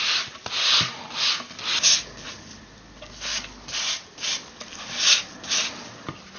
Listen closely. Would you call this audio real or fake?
real